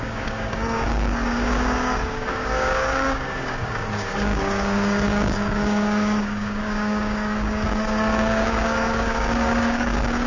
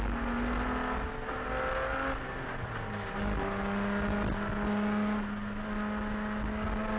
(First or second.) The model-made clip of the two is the first